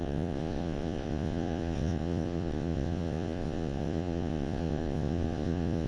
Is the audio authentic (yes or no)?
no